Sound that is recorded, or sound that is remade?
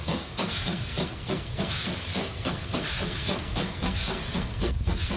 remade